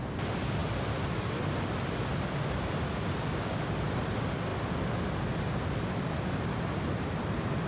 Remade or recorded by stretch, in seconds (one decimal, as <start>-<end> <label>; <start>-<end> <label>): 0.0-7.7 recorded